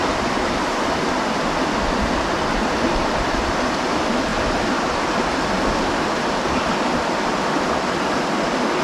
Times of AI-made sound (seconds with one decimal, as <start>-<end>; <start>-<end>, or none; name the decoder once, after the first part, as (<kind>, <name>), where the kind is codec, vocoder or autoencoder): none